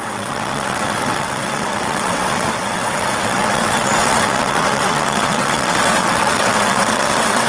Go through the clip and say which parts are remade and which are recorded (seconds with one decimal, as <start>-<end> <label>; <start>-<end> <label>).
0.0-7.5 remade